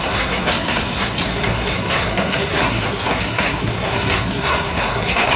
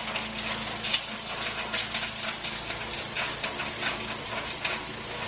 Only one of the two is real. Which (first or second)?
second